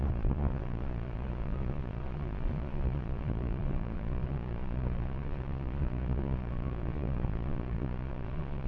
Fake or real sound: fake